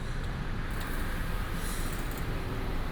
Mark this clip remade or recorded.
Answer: remade